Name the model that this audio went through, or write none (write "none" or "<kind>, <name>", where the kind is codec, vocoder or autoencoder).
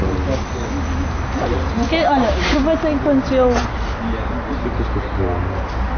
none